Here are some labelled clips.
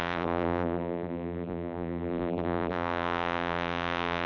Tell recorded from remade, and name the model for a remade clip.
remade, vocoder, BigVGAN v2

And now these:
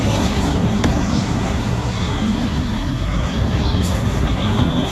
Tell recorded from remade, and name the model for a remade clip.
remade, codec, SNAC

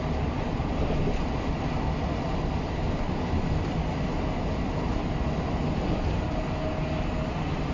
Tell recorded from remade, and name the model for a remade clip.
recorded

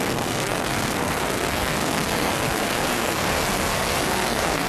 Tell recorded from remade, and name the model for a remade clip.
remade, codec, SNAC